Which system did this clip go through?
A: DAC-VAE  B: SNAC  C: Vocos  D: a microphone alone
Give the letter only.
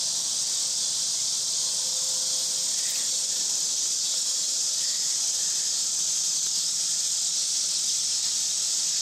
D